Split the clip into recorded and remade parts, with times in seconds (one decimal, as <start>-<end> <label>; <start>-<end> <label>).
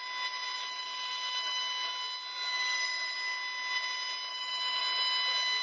0.0-0.6 recorded; 0.6-1.6 remade; 1.6-4.3 recorded; 4.3-4.8 remade; 4.8-5.6 recorded